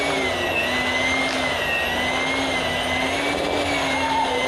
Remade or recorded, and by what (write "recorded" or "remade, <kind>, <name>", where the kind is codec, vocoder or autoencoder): recorded